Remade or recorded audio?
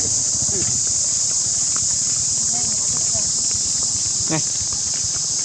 recorded